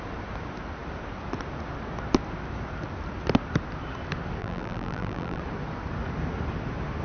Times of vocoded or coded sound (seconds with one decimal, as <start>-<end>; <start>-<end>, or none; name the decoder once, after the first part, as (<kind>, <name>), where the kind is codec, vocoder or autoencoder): 4.4-5.4 (vocoder, BigVGAN v2)